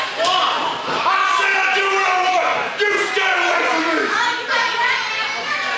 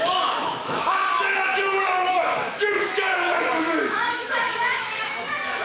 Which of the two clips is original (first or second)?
first